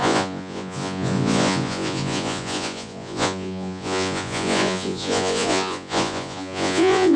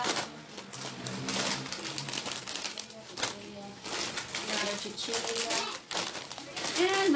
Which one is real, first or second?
second